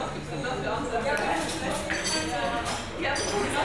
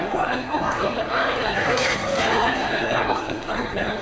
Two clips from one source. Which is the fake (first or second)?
second